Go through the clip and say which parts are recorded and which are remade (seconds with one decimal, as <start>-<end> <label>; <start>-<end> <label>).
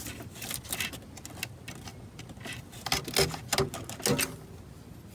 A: 0.0-5.1 recorded